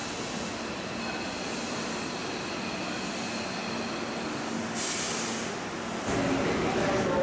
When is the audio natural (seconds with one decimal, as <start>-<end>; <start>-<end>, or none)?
0.0-7.2